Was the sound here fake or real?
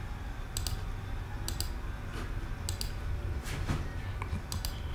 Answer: real